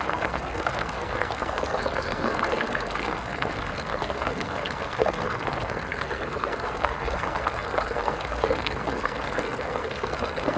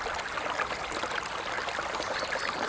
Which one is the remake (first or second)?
first